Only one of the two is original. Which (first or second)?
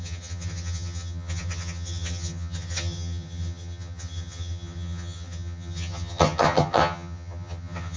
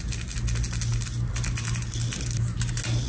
second